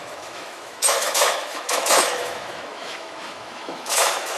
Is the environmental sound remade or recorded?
remade